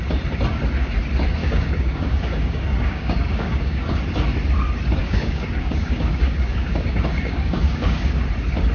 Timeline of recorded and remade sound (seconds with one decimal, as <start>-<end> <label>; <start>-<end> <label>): 0.0-1.4 recorded; 1.4-4.0 remade; 4.0-5.0 recorded; 5.0-8.2 remade; 8.2-8.7 recorded